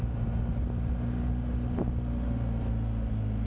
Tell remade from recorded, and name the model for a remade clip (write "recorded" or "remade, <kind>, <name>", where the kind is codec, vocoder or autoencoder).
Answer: recorded